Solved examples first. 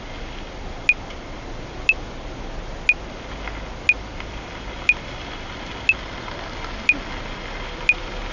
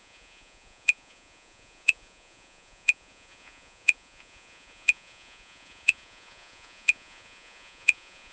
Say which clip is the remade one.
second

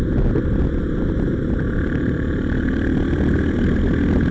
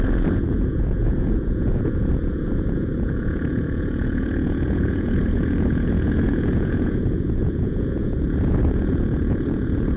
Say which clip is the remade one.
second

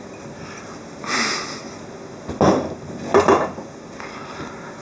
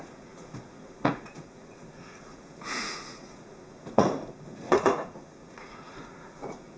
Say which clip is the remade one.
second